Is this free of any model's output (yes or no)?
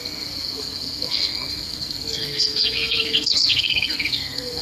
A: no